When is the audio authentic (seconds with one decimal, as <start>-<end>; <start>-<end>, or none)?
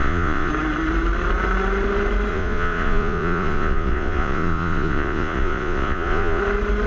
0.5-2.3; 6.4-6.9